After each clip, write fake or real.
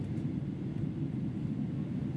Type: real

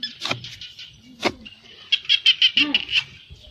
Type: real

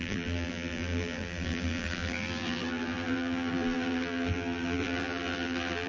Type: fake